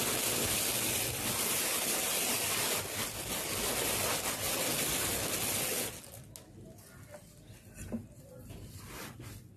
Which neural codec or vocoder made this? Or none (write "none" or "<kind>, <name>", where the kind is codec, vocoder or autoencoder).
none